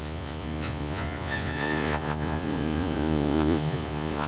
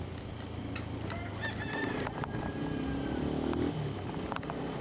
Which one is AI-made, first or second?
first